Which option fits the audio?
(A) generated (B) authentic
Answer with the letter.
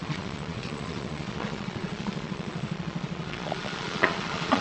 A